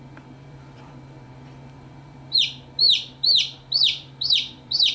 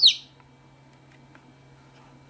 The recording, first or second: second